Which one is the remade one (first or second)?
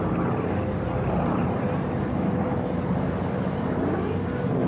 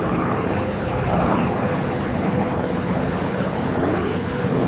second